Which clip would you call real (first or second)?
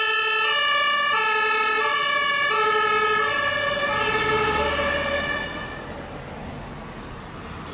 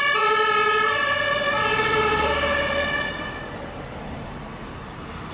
first